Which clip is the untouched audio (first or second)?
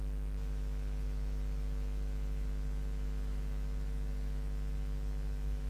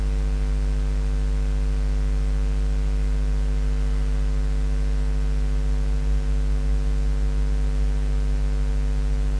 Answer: second